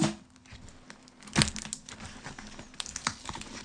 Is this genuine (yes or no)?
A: yes